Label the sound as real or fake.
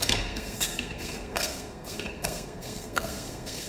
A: fake